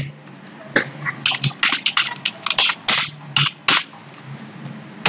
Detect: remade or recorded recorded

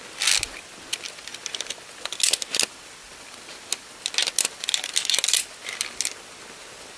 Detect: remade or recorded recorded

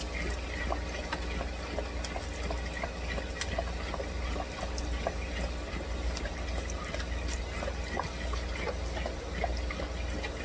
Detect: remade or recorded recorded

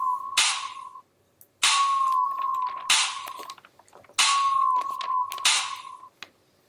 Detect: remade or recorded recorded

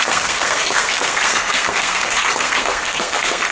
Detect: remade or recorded remade